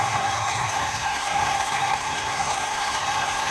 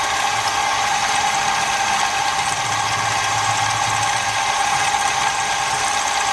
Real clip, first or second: second